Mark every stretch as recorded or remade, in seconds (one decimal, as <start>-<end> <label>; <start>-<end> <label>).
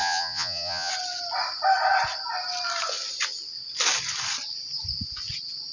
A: 0.0-0.9 remade; 0.9-5.7 recorded